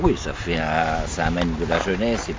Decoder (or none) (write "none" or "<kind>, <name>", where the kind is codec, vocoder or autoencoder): none